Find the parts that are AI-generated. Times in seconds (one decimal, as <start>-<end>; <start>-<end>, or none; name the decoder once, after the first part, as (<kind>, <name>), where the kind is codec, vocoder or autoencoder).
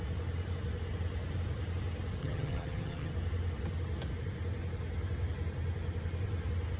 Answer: 2.2-3.1 (vocoder, HiFi-GAN)